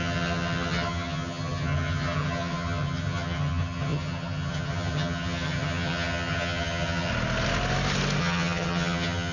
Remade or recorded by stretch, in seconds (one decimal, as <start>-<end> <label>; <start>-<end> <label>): 0.0-7.1 remade; 7.1-8.2 recorded; 8.2-9.3 remade